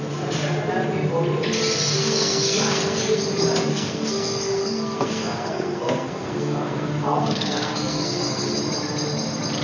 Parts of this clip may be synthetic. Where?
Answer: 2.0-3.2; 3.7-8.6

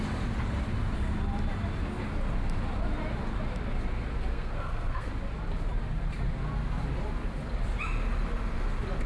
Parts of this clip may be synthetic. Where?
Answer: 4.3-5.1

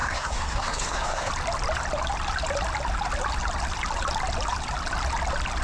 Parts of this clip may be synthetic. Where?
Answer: 0.0-1.3